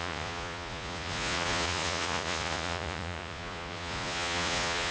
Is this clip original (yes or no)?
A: no